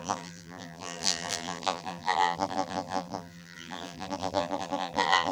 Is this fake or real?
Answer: fake